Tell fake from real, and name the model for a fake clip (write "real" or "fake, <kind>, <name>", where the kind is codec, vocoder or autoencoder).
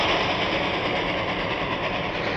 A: real